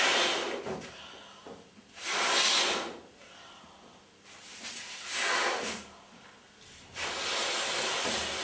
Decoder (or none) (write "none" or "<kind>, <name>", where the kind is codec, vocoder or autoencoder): none